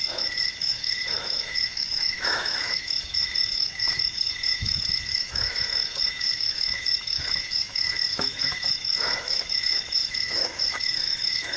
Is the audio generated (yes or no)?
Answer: yes